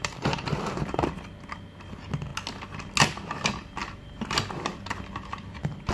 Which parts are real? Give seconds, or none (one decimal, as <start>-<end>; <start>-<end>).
1.0-3.8